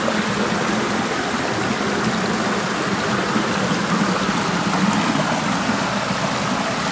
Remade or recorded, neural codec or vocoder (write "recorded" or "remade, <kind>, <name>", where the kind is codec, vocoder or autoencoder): recorded